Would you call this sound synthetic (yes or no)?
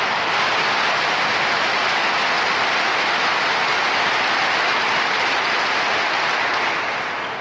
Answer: no